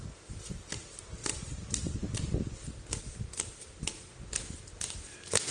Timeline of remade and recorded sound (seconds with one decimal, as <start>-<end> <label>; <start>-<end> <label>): 0.0-1.2 recorded; 1.2-1.9 remade; 1.9-5.5 recorded